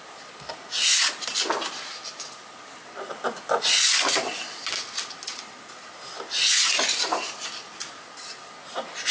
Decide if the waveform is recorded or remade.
recorded